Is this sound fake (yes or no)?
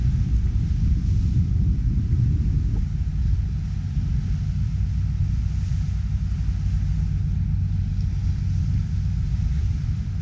no